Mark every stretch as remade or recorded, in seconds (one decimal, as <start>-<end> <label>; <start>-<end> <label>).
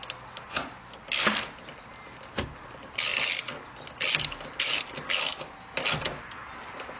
0.0-7.0 recorded